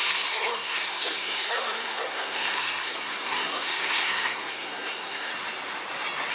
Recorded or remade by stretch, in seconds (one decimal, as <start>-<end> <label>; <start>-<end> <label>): 0.0-5.3 remade; 5.3-6.3 recorded